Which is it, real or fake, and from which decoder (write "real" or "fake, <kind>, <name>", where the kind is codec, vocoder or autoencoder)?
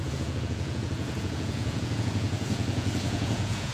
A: fake, vocoder, Vocos